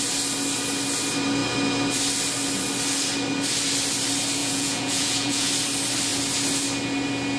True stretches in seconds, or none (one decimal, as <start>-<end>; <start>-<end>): 0.0-4.4; 5.5-7.4